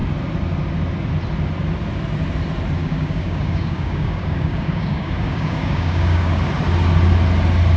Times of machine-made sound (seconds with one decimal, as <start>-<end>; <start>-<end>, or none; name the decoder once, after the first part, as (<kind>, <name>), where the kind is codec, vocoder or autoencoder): 2.8-6.4 (codec, DAC)